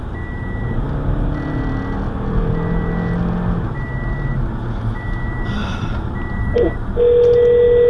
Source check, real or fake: real